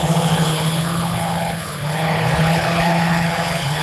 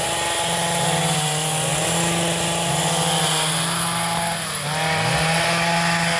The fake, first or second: first